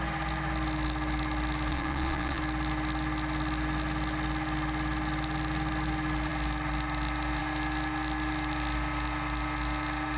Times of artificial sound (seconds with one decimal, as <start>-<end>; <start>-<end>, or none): 1.7-2.4